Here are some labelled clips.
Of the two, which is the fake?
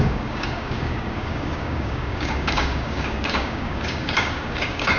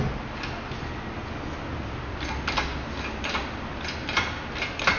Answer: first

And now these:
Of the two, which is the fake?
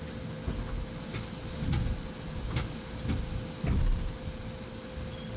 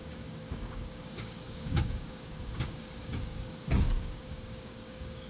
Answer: second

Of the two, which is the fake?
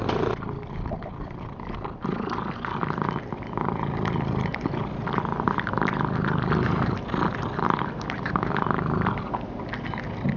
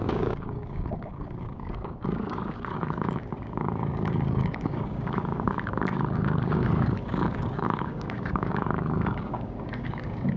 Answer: second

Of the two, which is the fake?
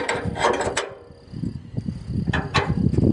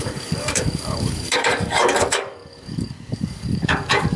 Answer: second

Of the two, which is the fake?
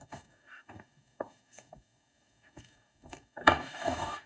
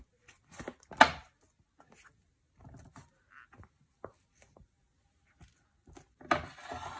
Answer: first